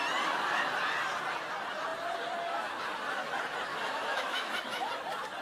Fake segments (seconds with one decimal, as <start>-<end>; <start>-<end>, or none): 3.7-4.9